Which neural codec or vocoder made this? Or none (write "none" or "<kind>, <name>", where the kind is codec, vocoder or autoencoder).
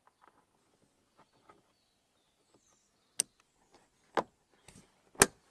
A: none